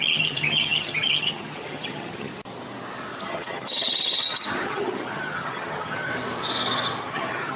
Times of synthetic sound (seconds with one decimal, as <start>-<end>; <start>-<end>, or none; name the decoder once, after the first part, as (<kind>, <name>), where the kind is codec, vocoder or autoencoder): 0.0-2.3 (vocoder, HiFi-GAN); 3.2-6.1; 7.0-7.6